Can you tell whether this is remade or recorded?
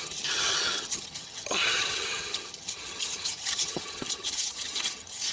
remade